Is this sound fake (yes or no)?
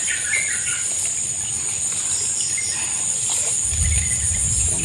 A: no